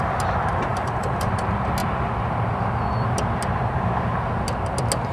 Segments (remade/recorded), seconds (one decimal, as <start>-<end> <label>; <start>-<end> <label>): 0.0-0.7 recorded; 0.7-1.3 remade; 1.3-5.1 recorded